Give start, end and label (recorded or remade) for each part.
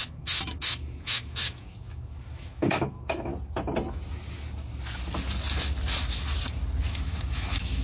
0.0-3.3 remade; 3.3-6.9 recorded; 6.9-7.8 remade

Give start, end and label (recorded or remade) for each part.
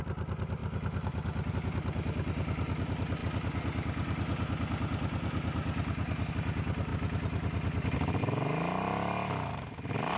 0.0-10.2 recorded